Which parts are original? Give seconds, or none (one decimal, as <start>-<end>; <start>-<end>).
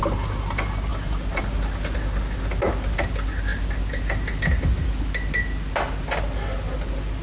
0.0-7.2